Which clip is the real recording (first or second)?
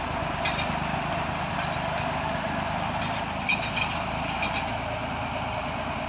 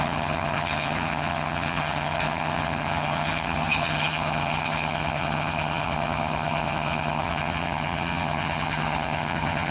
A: first